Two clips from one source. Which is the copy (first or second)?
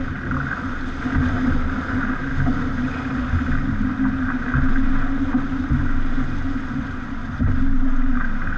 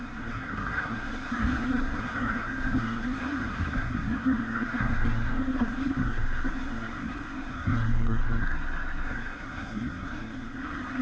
second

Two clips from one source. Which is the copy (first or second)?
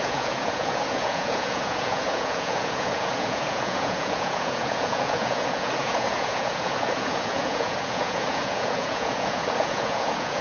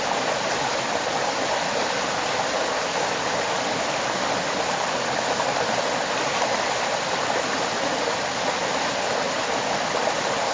first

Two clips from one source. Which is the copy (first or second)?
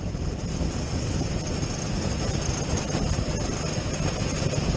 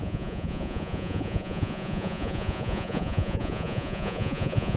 second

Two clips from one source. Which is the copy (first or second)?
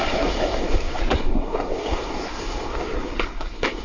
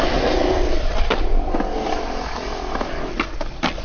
first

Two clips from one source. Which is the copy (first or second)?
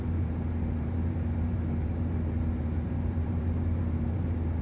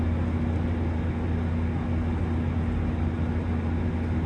first